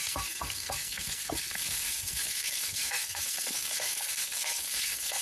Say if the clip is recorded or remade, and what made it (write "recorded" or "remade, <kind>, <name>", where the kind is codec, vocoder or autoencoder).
remade, codec, SNAC